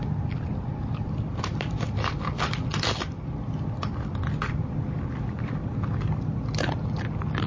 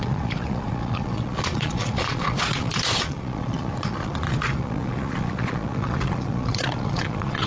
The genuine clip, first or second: first